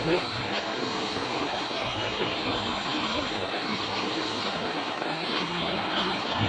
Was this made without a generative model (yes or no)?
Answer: no